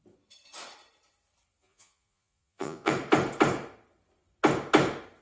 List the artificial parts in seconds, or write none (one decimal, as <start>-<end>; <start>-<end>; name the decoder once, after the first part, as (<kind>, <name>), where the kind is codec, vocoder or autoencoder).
1.6-2.9 (vocoder, Vocos)